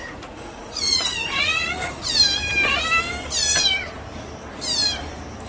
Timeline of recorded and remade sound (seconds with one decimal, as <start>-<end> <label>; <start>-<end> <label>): 0.0-2.1 remade; 2.1-5.5 recorded